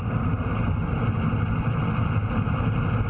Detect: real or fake real